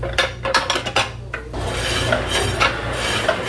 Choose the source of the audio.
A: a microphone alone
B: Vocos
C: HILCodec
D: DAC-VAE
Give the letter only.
A